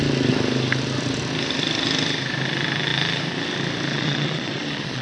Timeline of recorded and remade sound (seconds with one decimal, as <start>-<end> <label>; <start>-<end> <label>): 0.0-3.9 recorded; 3.9-5.0 remade